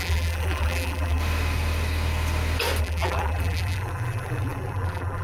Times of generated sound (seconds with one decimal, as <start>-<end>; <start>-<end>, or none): 0.0-1.2; 2.8-5.2